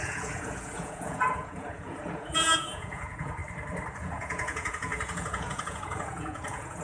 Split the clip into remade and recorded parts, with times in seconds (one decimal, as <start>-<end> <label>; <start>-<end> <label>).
0.0-3.4 remade; 3.4-4.0 recorded; 4.0-6.8 remade